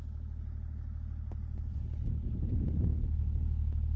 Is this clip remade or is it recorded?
recorded